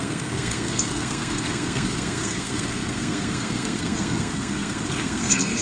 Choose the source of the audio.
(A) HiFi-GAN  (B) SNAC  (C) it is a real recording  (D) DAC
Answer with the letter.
B